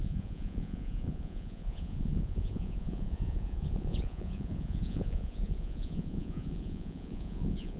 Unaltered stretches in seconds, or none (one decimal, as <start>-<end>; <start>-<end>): none